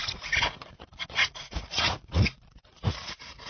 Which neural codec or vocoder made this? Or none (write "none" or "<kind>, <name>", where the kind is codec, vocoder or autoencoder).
vocoder, Vocos